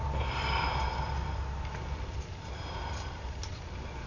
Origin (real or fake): real